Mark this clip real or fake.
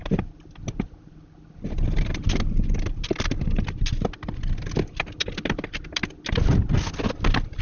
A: real